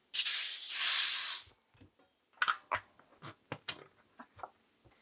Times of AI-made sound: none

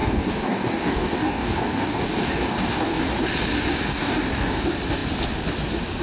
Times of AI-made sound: 0.0-3.0 (codec, DAC); 3.9-4.6

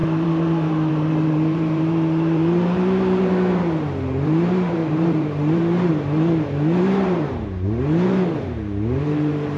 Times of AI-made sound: 0.0-9.6 (vocoder, BigVGAN v2)

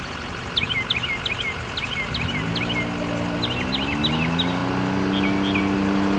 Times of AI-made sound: none